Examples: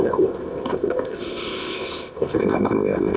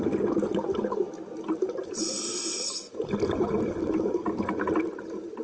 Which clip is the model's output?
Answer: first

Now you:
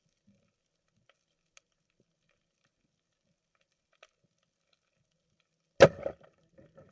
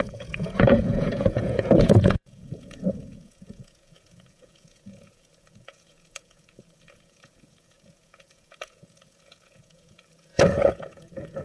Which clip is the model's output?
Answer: second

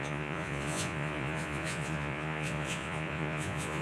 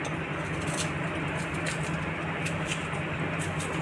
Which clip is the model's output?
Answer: first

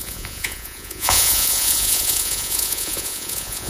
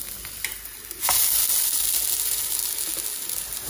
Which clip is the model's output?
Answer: first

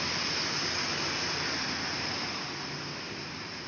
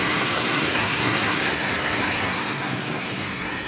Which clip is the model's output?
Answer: second